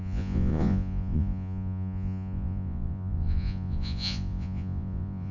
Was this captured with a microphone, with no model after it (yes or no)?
no